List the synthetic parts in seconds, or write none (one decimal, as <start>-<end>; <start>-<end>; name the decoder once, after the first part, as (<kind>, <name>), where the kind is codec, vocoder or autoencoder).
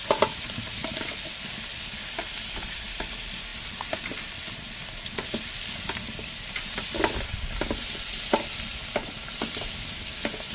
none